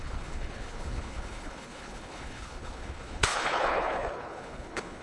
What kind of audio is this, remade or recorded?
remade